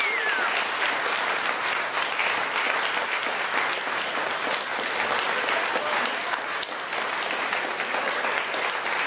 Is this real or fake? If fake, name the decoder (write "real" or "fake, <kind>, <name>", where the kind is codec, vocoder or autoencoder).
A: real